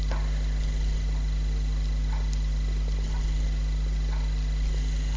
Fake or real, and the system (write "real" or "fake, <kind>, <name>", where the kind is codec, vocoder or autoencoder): real